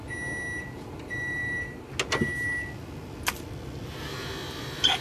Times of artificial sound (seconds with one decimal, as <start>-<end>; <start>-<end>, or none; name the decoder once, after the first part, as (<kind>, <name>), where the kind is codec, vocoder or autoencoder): none